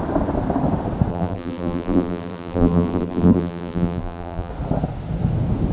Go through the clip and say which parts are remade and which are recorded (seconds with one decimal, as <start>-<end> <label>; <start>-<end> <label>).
0.0-1.1 recorded; 1.1-4.5 remade; 4.5-5.7 recorded